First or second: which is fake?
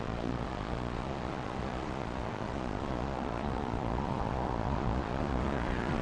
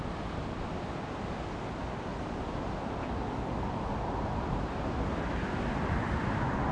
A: first